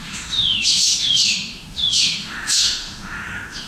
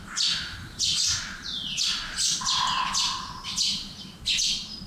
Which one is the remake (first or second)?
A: first